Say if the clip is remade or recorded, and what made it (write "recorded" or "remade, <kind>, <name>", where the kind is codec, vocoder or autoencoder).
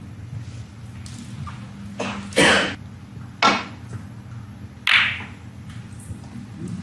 recorded